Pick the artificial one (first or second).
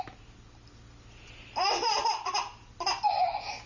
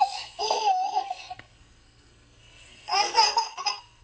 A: second